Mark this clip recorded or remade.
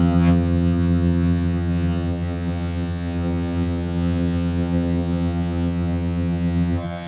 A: remade